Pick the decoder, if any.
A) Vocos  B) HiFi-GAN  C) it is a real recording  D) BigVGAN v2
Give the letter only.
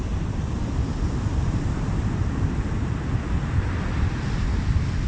D